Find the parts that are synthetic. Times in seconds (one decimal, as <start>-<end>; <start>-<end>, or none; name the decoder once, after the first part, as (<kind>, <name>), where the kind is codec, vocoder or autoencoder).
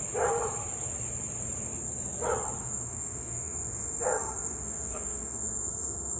2.6-6.2 (autoencoder, DAC-VAE)